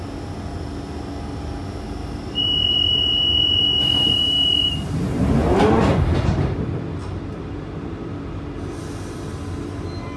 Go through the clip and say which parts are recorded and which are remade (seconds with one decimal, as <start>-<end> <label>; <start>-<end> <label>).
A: 0.0-2.0 recorded; 2.0-6.6 remade; 6.6-7.0 recorded; 7.0-10.2 remade